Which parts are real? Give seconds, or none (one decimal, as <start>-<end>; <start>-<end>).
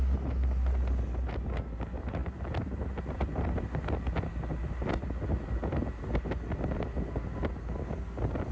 0.0-8.5